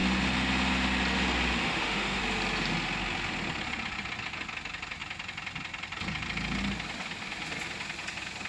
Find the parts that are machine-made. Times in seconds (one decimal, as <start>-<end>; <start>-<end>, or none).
1.6-2.2